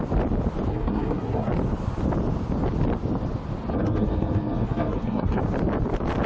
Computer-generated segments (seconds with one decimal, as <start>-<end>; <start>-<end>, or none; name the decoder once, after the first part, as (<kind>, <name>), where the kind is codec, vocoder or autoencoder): 0.7-1.5 (codec, SNAC); 3.7-5.4